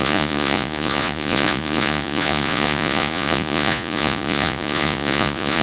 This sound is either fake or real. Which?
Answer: fake